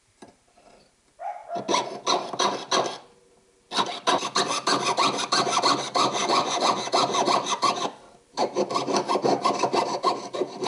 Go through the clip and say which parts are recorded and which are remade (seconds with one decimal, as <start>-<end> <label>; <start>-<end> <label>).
0.0-6.2 recorded; 6.2-6.9 remade; 6.9-10.7 recorded